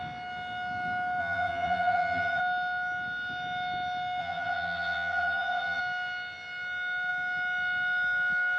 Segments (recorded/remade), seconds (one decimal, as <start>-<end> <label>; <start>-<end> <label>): 0.0-1.2 recorded; 1.2-2.4 remade; 2.4-4.2 recorded; 4.2-5.8 remade; 5.8-8.6 recorded